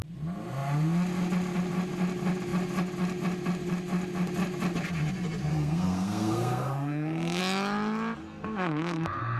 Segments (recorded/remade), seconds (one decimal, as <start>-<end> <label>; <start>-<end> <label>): 0.0-5.5 recorded; 5.5-7.4 remade; 7.4-8.2 recorded; 8.2-9.4 remade